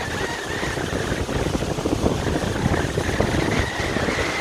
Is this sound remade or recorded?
remade